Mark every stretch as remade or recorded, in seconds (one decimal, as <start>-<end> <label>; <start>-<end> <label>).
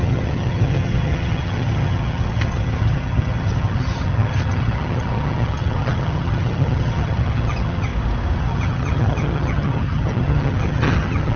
0.0-7.9 remade; 7.9-8.4 recorded; 8.4-11.4 remade